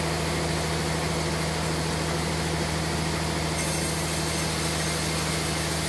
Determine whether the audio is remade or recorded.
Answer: recorded